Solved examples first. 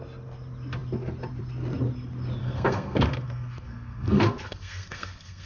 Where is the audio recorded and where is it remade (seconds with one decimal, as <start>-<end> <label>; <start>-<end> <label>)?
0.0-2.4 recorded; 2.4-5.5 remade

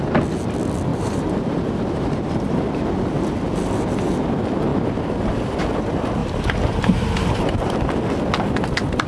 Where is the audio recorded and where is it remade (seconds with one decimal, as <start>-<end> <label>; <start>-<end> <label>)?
0.0-0.9 recorded; 0.9-2.8 remade; 2.8-6.2 recorded; 6.2-8.0 remade; 8.0-9.1 recorded

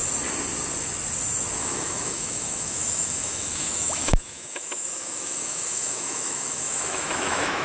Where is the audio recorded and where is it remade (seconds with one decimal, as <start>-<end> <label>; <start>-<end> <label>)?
0.0-1.6 recorded; 1.6-7.6 remade